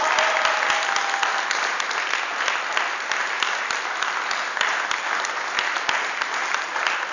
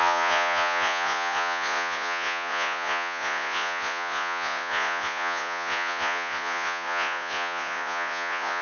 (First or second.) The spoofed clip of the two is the second